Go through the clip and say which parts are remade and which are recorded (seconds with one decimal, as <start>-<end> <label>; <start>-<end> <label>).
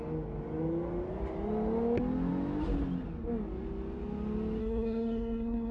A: 0.0-4.6 recorded; 4.6-5.7 remade